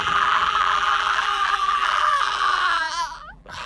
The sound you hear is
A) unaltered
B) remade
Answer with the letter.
B